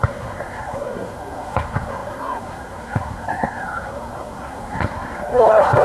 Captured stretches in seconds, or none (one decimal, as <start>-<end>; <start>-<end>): none